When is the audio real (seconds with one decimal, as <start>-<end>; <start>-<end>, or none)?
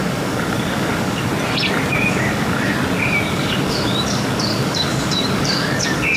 1.3-1.9; 2.7-3.3